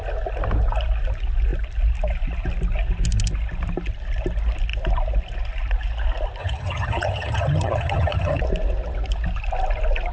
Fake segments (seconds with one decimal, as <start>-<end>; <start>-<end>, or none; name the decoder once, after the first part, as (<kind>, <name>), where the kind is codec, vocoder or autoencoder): 6.4-8.4 (vocoder, HiFi-GAN)